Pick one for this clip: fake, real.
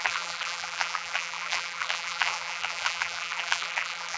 fake